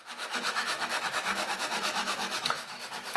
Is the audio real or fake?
fake